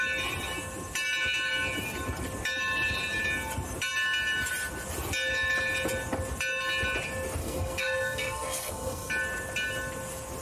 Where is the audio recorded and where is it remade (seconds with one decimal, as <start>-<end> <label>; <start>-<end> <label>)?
0.0-7.4 recorded; 7.4-9.1 remade; 9.1-10.4 recorded